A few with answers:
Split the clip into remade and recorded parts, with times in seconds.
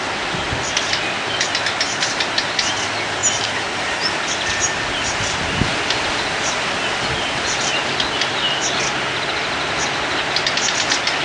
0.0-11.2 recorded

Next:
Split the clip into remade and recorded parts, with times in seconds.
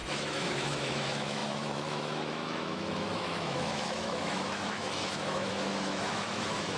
0.0-6.8 remade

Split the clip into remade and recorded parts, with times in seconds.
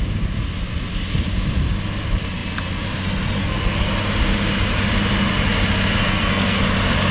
0.0-3.4 recorded; 3.4-3.9 remade; 3.9-6.0 recorded; 6.0-6.6 remade; 6.6-7.1 recorded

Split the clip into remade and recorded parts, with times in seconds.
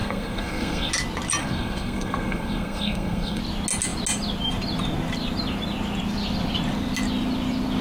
0.0-0.9 remade; 0.9-1.4 recorded; 1.4-3.4 remade; 3.4-7.8 recorded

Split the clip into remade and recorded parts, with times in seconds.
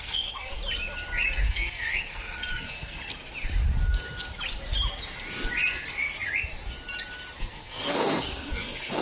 0.0-0.5 remade; 0.5-1.4 recorded; 1.4-3.0 remade; 3.0-7.4 recorded; 7.4-9.0 remade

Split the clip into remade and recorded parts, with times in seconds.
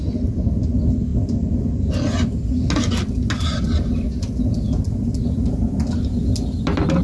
0.0-1.1 recorded; 1.1-1.9 remade; 1.9-7.0 recorded